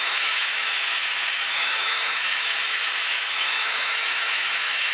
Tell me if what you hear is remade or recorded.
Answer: remade